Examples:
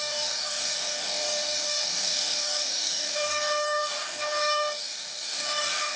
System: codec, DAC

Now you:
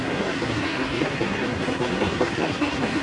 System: codec, SNAC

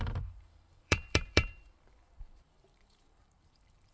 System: vocoder, BigVGAN v2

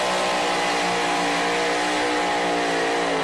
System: none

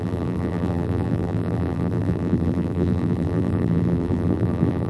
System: vocoder, BigVGAN v2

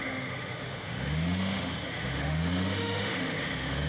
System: autoencoder, DAC-VAE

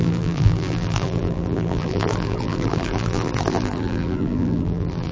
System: vocoder, BigVGAN v2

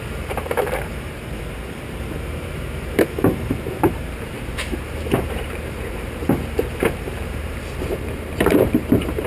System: vocoder, BigVGAN v2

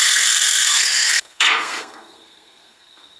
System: codec, SNAC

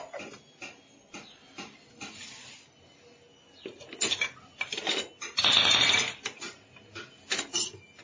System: none